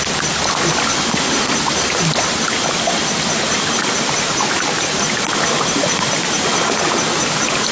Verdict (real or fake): real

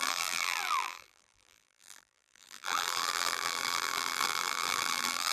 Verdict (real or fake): fake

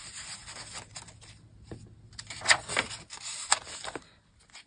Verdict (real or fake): real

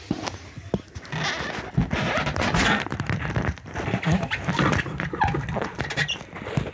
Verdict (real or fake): fake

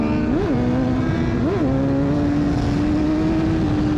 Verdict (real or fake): real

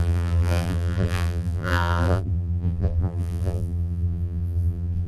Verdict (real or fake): fake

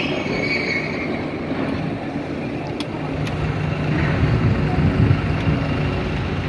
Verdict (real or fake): real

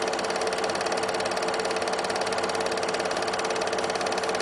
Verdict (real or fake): real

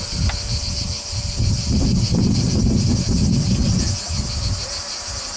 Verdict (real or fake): real